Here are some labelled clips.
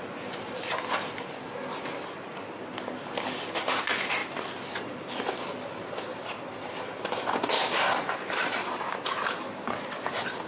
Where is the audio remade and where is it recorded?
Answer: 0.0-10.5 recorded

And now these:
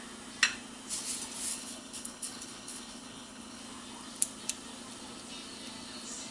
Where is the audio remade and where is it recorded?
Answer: 0.0-1.5 recorded; 1.5-3.6 remade; 3.6-6.3 recorded

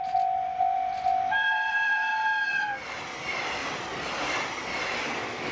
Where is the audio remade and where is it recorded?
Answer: 0.0-2.1 remade; 2.1-2.6 recorded; 2.6-5.5 remade